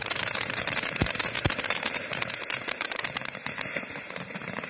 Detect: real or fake fake